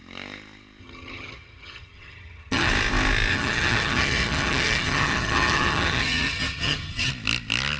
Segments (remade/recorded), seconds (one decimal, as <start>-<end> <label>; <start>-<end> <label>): 0.0-0.8 recorded; 0.8-2.7 remade; 2.7-3.3 recorded; 3.3-7.1 remade; 7.1-7.8 recorded